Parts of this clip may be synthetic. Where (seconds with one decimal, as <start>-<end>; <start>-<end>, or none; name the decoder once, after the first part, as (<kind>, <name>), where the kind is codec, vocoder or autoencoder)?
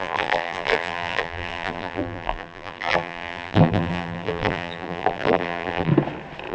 0.0-5.9 (vocoder, BigVGAN v2)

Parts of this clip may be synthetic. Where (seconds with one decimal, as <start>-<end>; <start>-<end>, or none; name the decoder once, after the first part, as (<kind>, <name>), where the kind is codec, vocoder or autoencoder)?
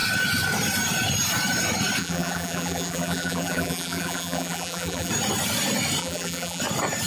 2.0-5.1 (vocoder, BigVGAN v2); 6.0-6.6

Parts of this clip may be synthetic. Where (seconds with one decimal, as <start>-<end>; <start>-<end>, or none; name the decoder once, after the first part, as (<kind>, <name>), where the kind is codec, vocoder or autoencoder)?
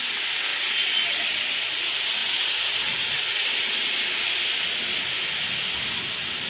none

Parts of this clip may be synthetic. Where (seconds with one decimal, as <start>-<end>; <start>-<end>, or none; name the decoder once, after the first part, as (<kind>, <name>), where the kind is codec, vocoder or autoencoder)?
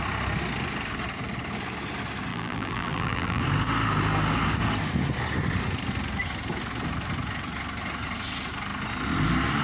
2.3-3.4 (vocoder, BigVGAN v2)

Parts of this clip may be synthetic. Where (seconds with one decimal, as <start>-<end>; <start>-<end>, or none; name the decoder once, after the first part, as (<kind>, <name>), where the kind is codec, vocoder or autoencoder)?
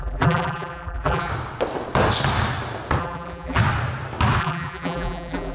0.0-1.3 (vocoder, BigVGAN v2); 3.0-3.6; 4.4-5.5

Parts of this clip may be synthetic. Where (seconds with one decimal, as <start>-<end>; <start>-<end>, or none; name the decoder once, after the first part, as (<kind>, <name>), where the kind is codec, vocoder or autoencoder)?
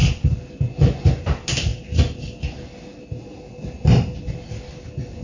none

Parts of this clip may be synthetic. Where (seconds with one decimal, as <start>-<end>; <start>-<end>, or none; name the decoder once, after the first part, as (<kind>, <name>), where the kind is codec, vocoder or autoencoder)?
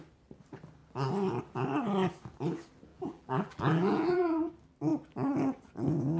2.9-4.5 (vocoder, BigVGAN v2)